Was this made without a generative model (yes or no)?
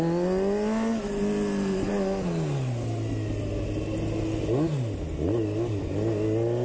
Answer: yes